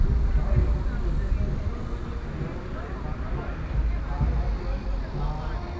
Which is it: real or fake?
real